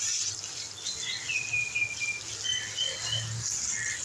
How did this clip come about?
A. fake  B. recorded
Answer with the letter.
B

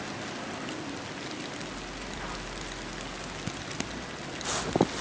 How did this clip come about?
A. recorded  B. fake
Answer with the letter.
A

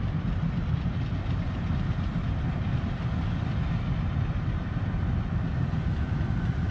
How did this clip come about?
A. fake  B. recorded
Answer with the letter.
B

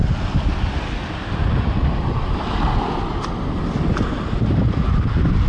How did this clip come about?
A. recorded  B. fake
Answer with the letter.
A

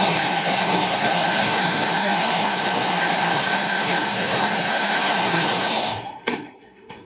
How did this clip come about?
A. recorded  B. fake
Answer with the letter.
B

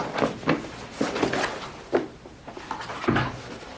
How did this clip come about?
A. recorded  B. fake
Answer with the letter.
A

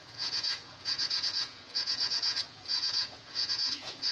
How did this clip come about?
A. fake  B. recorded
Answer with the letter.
A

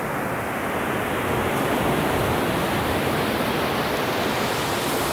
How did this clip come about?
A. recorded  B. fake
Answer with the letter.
A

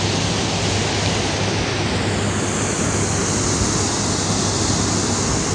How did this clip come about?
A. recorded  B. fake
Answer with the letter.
A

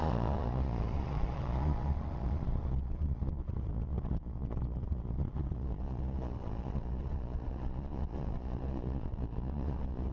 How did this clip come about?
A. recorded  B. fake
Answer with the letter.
B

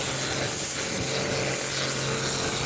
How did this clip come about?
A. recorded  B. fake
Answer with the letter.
A